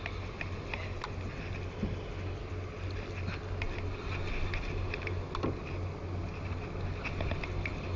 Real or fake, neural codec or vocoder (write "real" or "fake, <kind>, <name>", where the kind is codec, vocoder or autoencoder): real